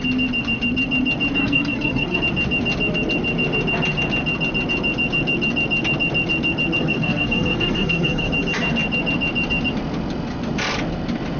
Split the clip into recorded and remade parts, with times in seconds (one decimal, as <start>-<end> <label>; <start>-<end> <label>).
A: 0.0-1.4 recorded; 1.4-2.2 remade; 2.2-6.8 recorded; 6.8-8.3 remade; 8.3-11.4 recorded